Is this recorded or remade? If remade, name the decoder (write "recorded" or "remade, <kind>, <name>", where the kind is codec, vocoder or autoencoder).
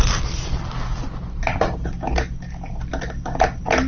recorded